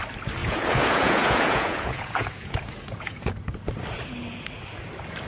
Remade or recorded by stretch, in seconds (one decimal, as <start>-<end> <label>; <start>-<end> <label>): 0.0-0.4 recorded; 0.4-3.6 remade; 3.6-5.3 recorded